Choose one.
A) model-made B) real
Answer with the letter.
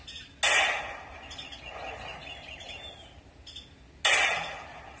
B